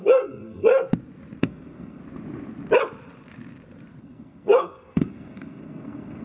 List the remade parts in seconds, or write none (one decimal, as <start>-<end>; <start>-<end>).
0.0-0.7; 1.4-2.0; 4.0-6.2